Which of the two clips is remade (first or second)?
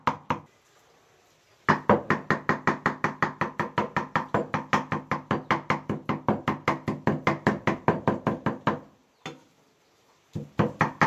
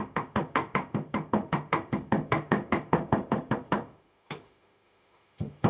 second